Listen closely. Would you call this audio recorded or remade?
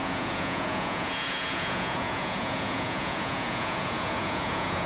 remade